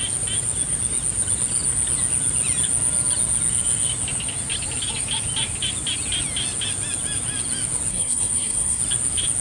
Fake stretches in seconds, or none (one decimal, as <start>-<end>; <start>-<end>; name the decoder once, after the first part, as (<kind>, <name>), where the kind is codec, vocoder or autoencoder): 7.9-8.8 (codec, SNAC)